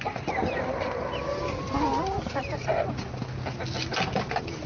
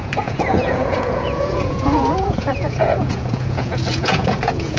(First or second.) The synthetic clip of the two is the second